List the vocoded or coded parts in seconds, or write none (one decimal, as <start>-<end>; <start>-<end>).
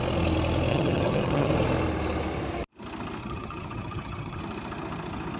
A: 0.7-1.5; 3.2-4.4